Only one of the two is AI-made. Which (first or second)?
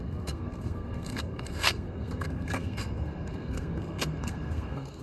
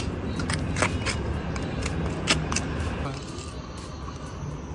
first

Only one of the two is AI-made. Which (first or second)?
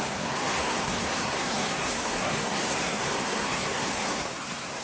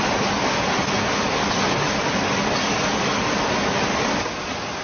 first